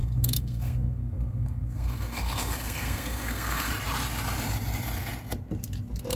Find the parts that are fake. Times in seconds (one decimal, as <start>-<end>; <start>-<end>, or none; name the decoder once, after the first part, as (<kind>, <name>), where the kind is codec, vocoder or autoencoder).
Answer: 0.0-3.7 (codec, SNAC)